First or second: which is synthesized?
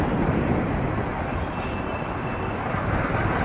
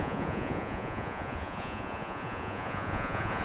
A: second